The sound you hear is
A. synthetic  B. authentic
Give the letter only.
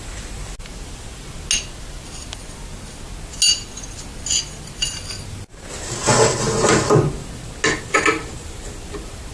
B